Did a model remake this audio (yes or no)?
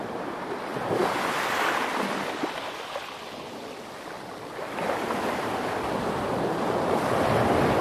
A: no